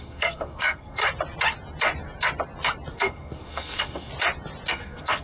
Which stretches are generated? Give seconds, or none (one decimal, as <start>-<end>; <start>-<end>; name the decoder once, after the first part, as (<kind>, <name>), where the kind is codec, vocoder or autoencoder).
0.0-1.0 (codec, SNAC); 2.9-4.1; 4.7-5.2